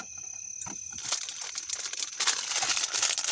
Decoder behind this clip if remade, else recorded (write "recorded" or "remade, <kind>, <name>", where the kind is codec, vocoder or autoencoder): recorded